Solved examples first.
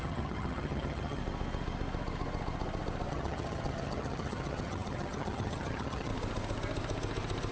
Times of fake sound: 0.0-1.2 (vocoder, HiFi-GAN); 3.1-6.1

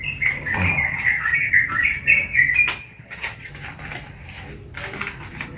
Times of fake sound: 0.9-1.5 (vocoder, HiFi-GAN); 2.8-3.5

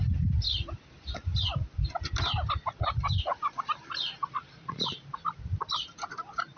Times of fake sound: none

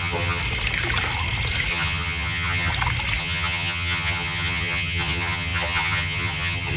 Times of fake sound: 0.0-0.4 (vocoder, HiFi-GAN); 1.7-2.7; 3.2-6.8

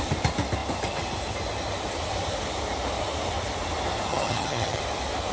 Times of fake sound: 4.1-4.8 (vocoder, HiFi-GAN)

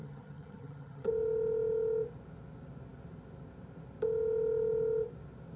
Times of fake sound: 0.0-1.1 (vocoder, HiFi-GAN)

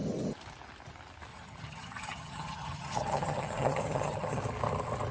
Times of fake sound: 1.3-4.4 (vocoder, HiFi-GAN)